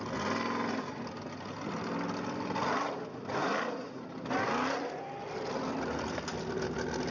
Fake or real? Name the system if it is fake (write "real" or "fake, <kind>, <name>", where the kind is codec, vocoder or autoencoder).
real